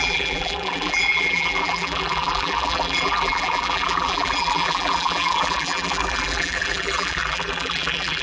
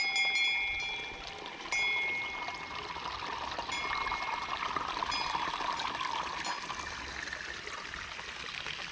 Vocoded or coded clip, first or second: first